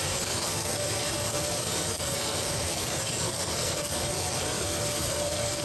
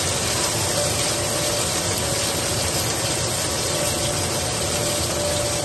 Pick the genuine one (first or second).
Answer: second